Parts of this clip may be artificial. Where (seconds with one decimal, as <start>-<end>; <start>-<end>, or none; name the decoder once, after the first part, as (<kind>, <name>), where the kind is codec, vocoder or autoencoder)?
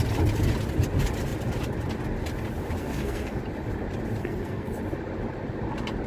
2.8-3.4 (codec, SNAC); 4.2-4.8